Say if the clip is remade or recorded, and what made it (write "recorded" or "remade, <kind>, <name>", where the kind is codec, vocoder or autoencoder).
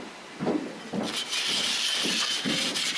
recorded